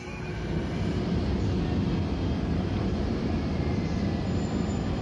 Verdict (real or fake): real